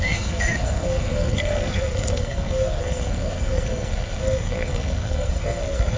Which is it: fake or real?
fake